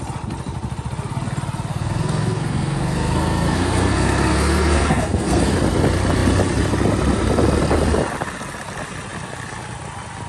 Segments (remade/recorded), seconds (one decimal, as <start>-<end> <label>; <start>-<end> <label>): 0.0-1.7 recorded; 1.7-5.5 remade; 5.5-10.3 recorded